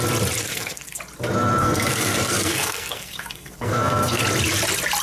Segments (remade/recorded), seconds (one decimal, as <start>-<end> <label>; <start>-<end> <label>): 0.0-0.4 recorded; 0.4-1.0 remade; 1.0-1.6 recorded; 1.6-4.2 remade; 4.2-5.0 recorded